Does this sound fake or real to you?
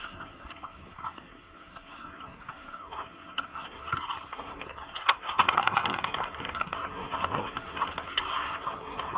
fake